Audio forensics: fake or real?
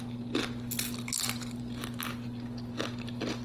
real